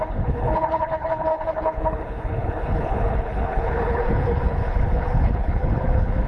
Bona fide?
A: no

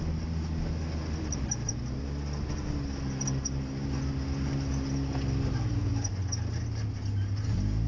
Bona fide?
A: yes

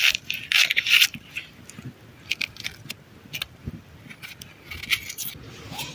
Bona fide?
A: yes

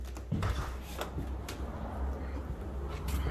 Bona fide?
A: yes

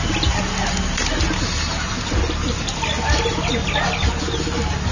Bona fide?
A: yes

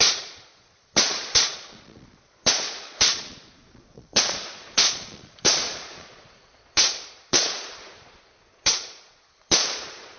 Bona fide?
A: no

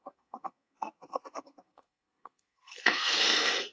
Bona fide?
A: no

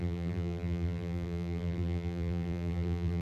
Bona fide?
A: no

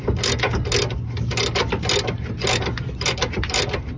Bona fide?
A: yes